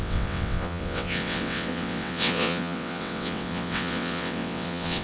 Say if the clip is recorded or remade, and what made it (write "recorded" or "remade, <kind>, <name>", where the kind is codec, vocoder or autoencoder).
remade, vocoder, WaveNeXt